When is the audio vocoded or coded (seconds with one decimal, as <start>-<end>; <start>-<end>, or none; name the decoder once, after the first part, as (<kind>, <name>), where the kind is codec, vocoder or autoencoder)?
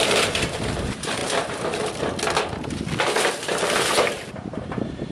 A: 0.0-1.2 (vocoder, BigVGAN v2); 4.3-5.1